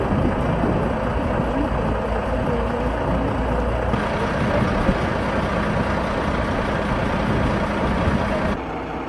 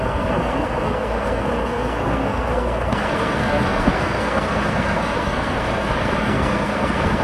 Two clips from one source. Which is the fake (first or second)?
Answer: second